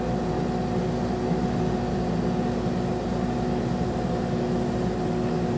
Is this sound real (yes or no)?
yes